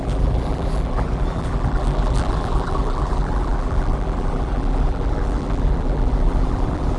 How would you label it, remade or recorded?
remade